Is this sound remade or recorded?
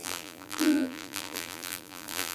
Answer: remade